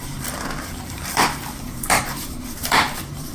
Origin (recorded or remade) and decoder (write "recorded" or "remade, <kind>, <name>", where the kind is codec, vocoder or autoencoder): remade, vocoder, BigVGAN v2